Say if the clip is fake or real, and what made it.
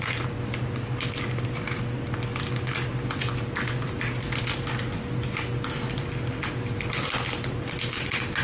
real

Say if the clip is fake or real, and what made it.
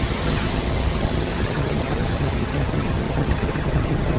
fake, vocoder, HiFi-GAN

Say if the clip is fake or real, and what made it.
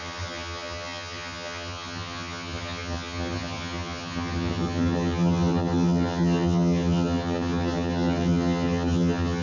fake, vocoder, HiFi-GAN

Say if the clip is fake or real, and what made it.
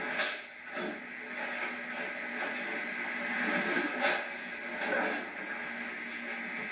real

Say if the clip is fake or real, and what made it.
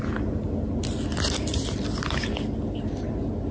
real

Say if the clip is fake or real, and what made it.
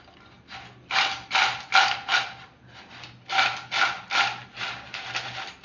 real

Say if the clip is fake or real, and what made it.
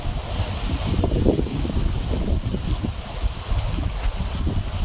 real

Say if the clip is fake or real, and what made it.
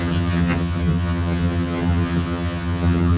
fake, vocoder, HiFi-GAN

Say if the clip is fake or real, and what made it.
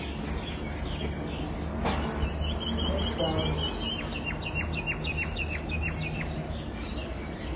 real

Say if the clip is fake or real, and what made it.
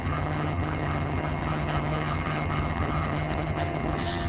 fake, vocoder, HiFi-GAN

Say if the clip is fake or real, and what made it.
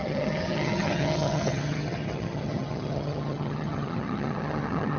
fake, vocoder, HiFi-GAN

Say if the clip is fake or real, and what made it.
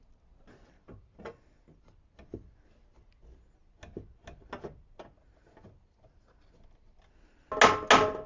real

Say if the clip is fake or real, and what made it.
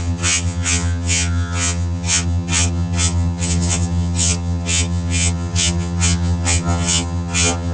fake, vocoder, HiFi-GAN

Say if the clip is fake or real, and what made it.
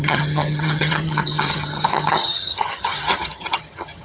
fake, vocoder, HiFi-GAN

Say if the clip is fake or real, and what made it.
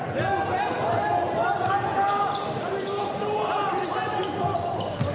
real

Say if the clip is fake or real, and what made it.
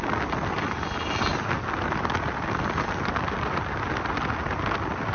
real